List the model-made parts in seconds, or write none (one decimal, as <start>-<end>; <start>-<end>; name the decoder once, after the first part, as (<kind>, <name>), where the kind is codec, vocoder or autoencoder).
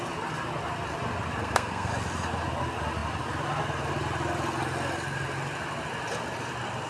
1.4-1.9 (codec, SNAC)